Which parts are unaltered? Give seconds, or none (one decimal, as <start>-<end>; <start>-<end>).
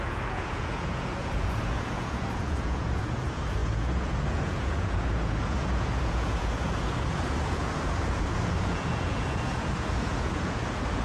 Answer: none